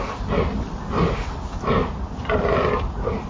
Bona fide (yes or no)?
yes